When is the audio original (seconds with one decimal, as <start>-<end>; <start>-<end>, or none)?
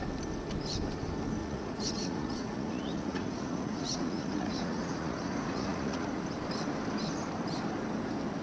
0.0-1.4; 6.2-8.4